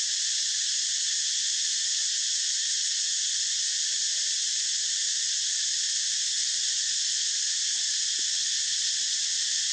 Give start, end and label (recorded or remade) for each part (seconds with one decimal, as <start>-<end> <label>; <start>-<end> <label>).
0.0-9.7 recorded